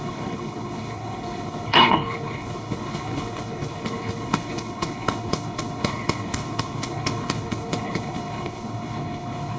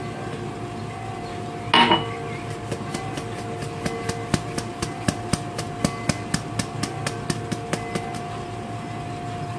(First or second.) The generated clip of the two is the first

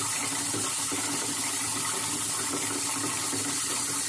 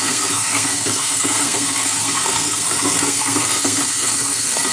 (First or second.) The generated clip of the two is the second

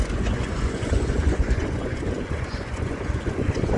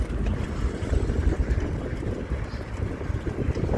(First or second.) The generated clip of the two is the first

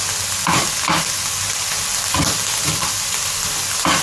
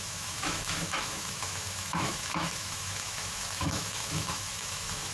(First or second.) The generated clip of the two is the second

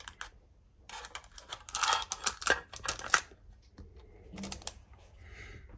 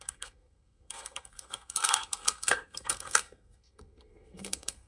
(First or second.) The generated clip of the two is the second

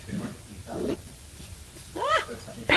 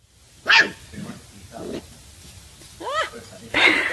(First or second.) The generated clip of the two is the first